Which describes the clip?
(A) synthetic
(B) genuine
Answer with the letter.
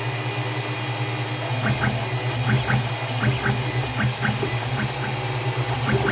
B